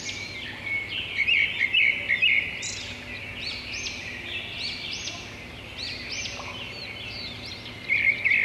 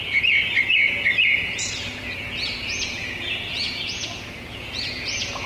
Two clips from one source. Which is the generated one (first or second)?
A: second